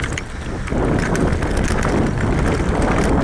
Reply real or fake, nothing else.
real